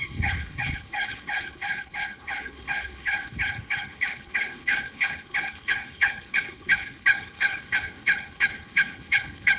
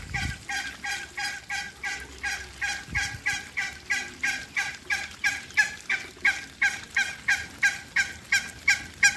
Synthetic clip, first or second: first